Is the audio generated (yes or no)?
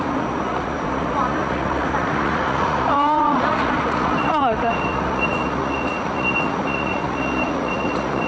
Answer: yes